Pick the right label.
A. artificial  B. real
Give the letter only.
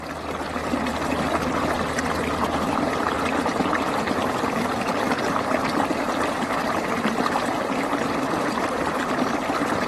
B